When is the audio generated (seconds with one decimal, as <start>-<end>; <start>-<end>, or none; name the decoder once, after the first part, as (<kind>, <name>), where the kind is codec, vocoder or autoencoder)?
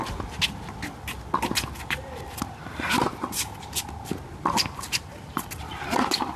none